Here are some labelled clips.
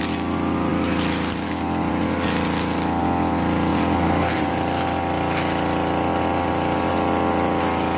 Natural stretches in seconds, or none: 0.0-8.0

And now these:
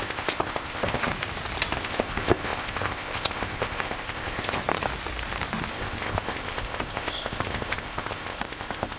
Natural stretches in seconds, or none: 1.1-1.8; 4.6-5.7

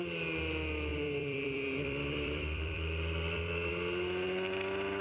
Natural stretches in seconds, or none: 0.0-0.9; 3.7-5.0

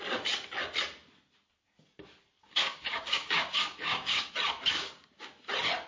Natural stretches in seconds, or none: 0.0-2.6; 4.3-4.7; 5.3-5.9

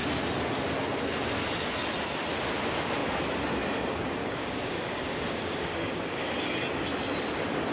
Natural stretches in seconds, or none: 0.0-4.2; 6.3-7.7

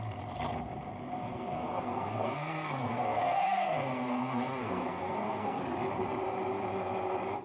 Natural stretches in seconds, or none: 0.0-1.2; 5.6-7.4

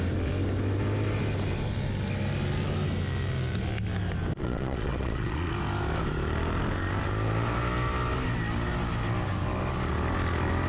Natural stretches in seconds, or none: 0.0-4.4; 5.5-10.7

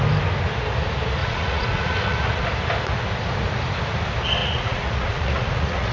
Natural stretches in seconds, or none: 0.0-1.2; 2.4-4.4